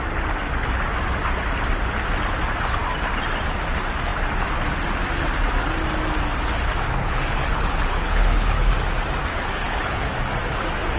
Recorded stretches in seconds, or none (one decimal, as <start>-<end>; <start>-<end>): 0.0-7.0; 8.7-9.3; 10.2-11.0